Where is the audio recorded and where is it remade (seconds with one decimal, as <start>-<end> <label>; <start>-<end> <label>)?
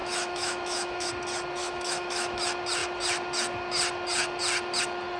0.0-1.1 remade; 1.1-1.6 recorded; 1.6-2.4 remade; 2.4-5.2 recorded